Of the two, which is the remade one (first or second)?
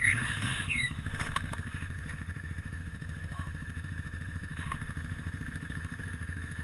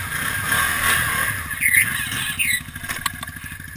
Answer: first